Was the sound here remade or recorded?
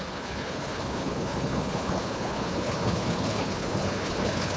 remade